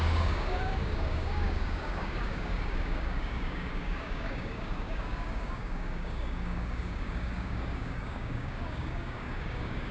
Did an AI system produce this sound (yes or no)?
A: yes